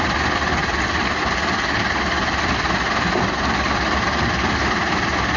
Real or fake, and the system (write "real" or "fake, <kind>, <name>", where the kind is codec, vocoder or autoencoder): real